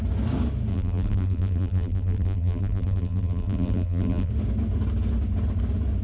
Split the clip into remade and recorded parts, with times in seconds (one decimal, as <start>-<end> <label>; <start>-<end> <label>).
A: 0.0-0.7 recorded; 0.7-4.3 remade; 4.3-6.0 recorded